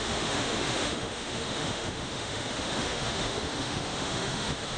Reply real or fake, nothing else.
fake